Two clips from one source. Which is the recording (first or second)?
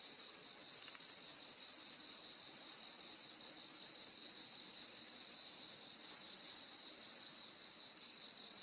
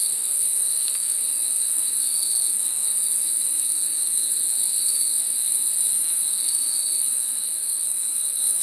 first